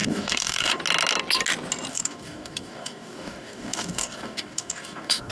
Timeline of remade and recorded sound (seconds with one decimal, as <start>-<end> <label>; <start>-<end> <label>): 0.0-0.8 remade; 0.8-1.9 recorded; 1.9-5.3 remade